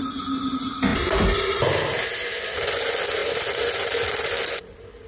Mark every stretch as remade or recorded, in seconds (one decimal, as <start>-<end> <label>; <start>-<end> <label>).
0.0-5.1 recorded